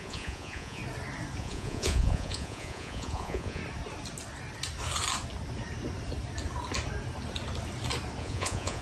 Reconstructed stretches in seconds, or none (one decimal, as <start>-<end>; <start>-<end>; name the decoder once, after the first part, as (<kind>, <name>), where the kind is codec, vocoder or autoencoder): 0.0-0.8 (vocoder, Vocos); 1.4-3.6; 8.2-8.8